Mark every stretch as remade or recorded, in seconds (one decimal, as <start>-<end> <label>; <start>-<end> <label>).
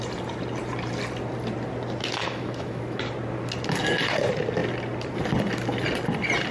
0.0-2.2 recorded; 2.2-3.0 remade; 3.0-6.5 recorded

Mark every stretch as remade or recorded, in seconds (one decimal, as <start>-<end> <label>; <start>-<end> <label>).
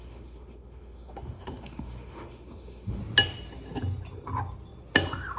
0.0-3.0 remade; 3.0-5.4 recorded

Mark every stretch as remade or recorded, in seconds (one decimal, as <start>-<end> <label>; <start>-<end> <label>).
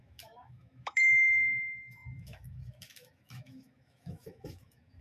0.0-5.0 remade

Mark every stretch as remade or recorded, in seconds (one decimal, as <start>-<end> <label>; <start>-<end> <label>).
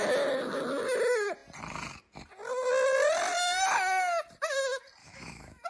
0.0-5.0 recorded; 5.0-5.7 remade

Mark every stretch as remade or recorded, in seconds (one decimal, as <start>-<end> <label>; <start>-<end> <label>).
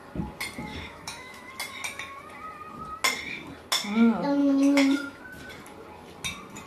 0.0-0.7 recorded; 0.7-1.5 remade; 1.5-4.4 recorded; 4.4-5.2 remade; 5.2-6.7 recorded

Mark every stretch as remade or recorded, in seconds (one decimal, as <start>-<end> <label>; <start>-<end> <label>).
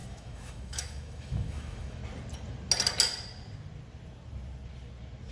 0.0-2.0 remade; 2.0-5.3 recorded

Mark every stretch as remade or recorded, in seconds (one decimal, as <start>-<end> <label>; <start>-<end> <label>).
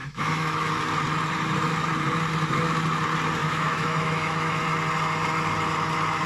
0.0-0.7 remade; 0.7-3.4 recorded; 3.4-4.6 remade; 4.6-6.3 recorded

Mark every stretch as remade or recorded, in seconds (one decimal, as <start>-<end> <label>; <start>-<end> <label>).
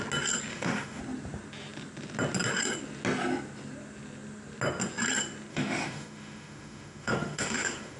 0.0-0.5 recorded; 0.5-1.0 remade; 1.0-5.5 recorded; 5.5-8.0 remade